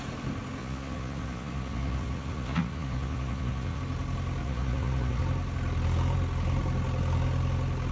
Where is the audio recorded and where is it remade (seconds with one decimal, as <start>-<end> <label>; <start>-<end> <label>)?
0.0-0.6 recorded; 0.6-3.8 remade; 3.8-4.4 recorded; 4.4-5.2 remade; 5.2-7.9 recorded